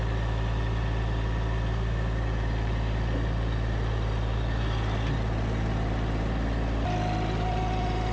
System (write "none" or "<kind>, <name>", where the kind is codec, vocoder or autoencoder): none